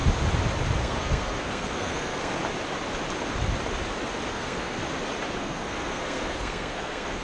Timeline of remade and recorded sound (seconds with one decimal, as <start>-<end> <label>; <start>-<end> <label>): 0.0-0.8 recorded; 0.8-2.4 remade; 2.4-4.3 recorded; 4.3-4.8 remade; 4.8-5.4 recorded; 5.4-7.2 remade